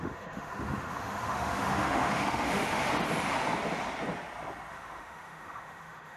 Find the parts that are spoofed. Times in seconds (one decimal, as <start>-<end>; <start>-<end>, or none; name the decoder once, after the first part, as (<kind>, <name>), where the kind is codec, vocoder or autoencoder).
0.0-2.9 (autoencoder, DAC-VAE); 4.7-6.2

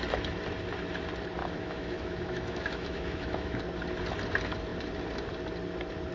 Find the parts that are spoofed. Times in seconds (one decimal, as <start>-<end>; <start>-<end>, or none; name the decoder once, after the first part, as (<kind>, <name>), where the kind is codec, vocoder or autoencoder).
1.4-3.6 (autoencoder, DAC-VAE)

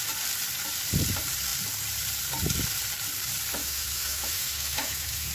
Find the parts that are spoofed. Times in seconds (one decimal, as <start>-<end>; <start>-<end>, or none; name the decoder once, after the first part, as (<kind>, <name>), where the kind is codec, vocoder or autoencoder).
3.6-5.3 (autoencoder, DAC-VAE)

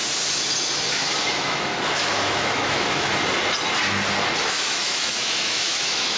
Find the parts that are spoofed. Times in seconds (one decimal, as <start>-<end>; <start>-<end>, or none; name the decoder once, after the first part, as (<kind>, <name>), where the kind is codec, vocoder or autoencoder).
1.3-3.1 (autoencoder, DAC-VAE); 4.4-6.2

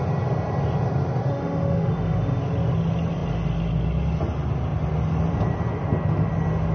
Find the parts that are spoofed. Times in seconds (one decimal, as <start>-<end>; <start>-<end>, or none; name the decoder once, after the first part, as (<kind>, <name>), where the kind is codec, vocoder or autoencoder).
1.3-2.4 (autoencoder, DAC-VAE)

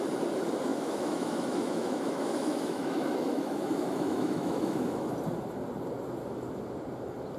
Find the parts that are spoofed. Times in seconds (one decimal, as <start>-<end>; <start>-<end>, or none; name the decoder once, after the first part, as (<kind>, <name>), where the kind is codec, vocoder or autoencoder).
0.7-5.1 (autoencoder, DAC-VAE)

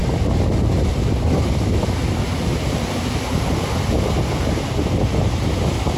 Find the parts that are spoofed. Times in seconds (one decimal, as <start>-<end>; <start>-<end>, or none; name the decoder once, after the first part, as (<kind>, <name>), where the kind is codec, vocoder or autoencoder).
none